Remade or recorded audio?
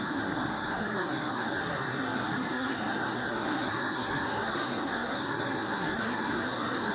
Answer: remade